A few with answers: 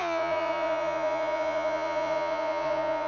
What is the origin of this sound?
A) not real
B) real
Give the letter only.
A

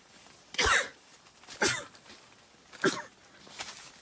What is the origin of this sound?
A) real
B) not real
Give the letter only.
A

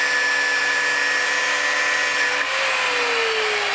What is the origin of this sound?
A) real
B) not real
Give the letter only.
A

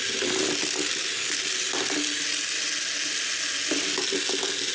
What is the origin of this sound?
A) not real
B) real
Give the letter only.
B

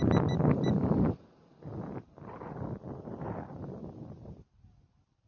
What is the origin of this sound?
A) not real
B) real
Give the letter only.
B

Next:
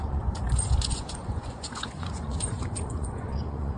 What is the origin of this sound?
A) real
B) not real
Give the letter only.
B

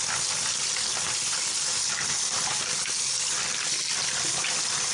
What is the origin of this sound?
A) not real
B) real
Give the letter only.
B